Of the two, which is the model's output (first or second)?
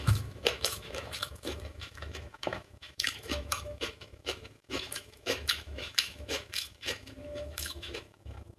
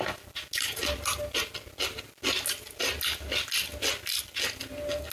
first